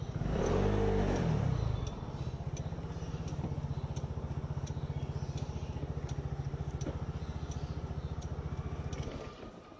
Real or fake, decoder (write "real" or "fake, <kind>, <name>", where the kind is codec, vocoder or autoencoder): real